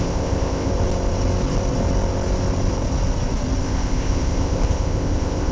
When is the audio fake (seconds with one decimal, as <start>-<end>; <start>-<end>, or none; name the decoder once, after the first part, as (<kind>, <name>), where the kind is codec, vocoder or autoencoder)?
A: 0.0-0.7 (codec, ZipCodec); 3.6-5.5